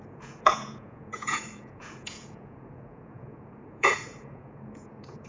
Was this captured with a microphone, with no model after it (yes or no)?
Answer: no